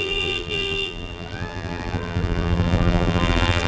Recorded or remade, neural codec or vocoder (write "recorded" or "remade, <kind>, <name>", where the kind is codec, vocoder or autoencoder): remade, vocoder, BigVGAN v2